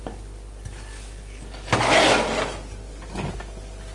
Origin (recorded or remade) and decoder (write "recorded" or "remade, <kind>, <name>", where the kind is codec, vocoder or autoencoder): recorded